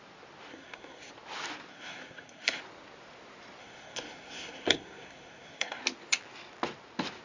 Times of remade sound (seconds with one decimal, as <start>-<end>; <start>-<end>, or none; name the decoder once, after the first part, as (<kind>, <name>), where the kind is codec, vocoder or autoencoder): 0.5-1.1 (codec, SNAC); 1.7-2.6; 3.6-5.8